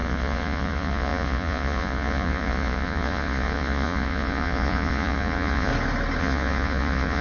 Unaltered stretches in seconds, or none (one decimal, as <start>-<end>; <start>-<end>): 5.7-6.2